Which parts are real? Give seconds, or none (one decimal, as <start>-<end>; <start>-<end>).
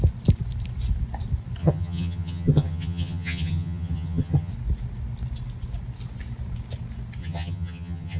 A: 0.0-1.6; 4.5-7.2